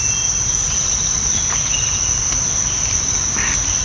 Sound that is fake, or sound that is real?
real